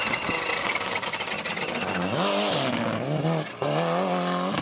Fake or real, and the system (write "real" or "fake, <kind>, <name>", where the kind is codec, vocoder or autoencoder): real